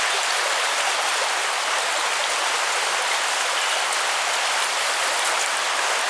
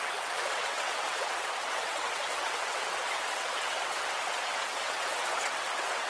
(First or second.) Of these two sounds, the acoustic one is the first